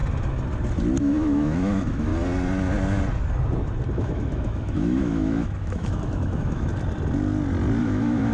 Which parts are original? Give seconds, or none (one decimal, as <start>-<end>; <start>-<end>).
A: 0.0-1.0; 2.1-3.9; 6.7-7.8